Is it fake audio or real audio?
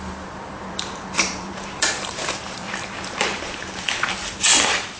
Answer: fake